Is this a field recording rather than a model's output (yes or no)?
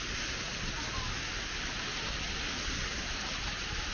yes